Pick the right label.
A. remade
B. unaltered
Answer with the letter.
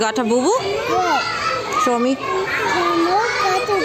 B